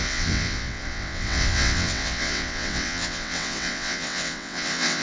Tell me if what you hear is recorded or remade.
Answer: remade